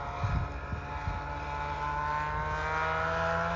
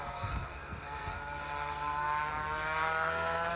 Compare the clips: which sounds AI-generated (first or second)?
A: second